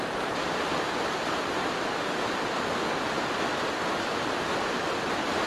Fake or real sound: real